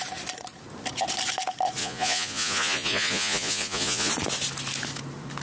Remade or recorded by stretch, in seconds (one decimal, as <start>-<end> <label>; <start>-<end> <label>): 0.0-1.8 recorded; 1.8-4.1 remade; 4.1-5.4 recorded